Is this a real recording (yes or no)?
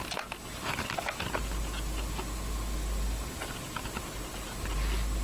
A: yes